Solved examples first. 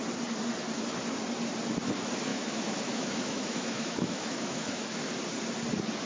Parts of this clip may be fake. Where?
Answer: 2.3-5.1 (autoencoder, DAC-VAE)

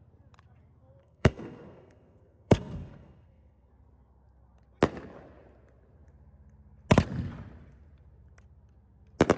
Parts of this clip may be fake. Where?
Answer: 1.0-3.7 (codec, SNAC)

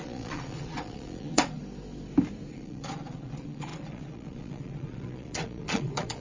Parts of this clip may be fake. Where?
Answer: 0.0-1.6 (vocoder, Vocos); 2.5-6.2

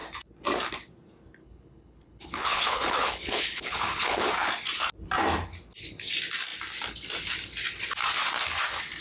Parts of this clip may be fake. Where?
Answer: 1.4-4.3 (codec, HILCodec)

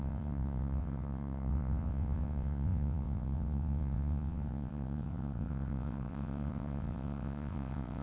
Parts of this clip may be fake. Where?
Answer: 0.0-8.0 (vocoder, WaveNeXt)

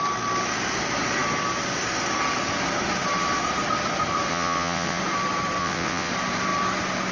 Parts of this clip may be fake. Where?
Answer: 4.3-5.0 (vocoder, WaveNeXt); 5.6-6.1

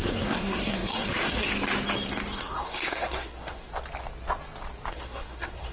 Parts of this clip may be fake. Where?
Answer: 0.0-1.5 (codec, SNAC); 2.4-3.7; 4.9-5.7